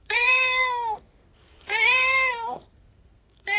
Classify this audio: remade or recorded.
remade